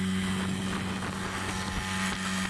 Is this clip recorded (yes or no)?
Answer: yes